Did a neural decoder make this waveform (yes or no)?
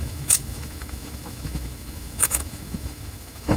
yes